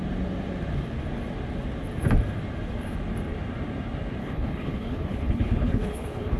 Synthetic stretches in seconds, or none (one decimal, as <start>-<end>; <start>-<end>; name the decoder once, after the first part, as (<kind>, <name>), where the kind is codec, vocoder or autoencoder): 4.2-6.4 (codec, HILCodec)